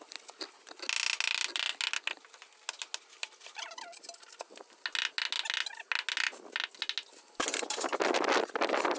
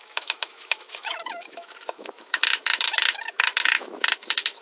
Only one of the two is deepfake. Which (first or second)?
second